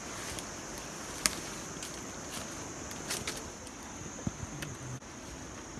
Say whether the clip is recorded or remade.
recorded